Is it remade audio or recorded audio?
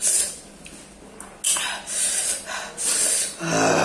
recorded